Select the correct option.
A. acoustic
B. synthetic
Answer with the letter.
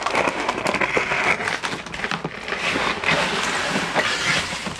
A